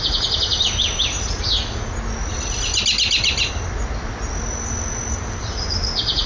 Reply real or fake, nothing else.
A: real